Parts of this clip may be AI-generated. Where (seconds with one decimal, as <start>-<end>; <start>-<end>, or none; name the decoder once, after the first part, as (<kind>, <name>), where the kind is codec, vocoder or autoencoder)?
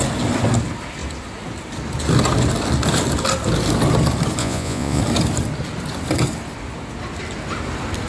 4.4-5.0 (vocoder, Vocos)